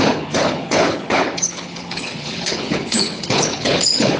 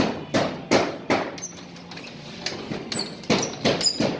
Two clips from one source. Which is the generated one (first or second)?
first